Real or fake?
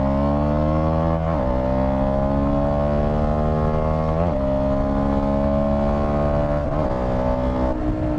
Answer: real